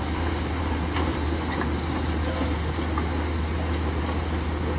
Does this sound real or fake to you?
real